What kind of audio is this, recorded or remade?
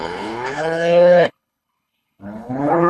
remade